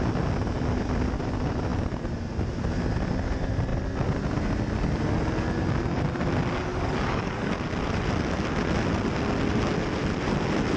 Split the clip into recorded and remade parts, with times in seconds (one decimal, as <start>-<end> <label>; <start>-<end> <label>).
0.0-6.7 recorded; 6.7-7.5 remade; 7.5-10.8 recorded